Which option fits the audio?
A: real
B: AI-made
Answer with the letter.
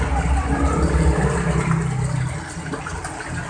A